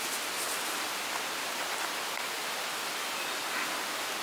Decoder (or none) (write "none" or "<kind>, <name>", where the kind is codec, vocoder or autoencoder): none